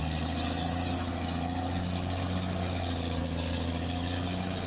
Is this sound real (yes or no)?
yes